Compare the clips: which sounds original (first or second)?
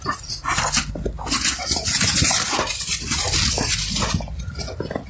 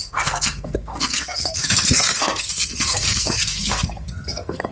first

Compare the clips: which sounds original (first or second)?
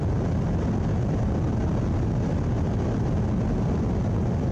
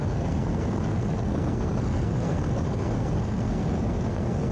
first